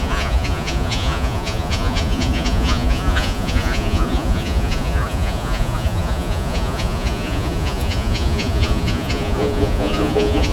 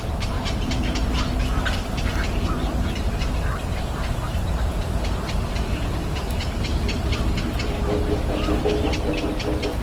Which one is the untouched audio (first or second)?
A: second